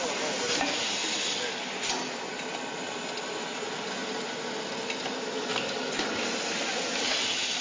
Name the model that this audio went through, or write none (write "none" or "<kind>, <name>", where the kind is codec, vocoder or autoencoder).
none